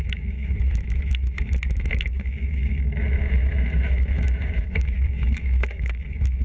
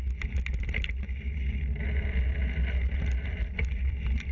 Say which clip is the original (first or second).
second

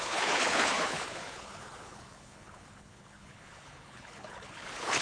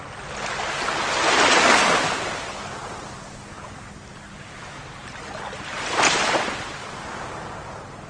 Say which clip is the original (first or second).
second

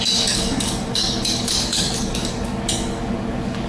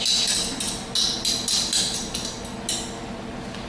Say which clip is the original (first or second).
second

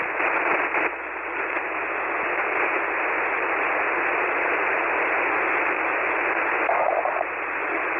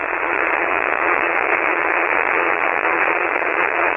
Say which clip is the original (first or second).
first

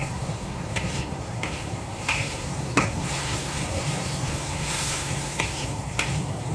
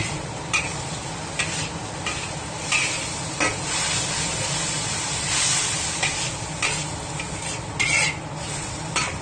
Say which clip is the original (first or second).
second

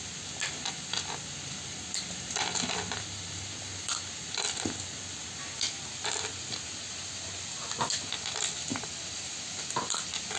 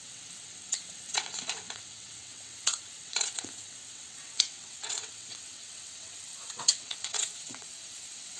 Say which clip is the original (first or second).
first